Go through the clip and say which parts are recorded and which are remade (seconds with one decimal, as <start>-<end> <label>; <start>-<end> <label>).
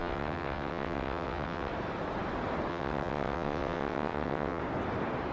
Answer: 0.0-1.7 remade; 1.7-2.7 recorded; 2.7-4.6 remade; 4.6-5.3 recorded